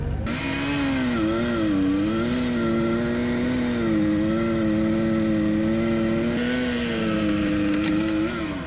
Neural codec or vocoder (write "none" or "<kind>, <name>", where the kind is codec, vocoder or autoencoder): none